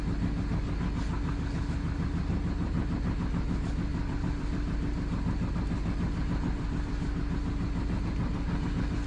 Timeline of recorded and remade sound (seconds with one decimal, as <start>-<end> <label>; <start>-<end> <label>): 0.0-9.1 recorded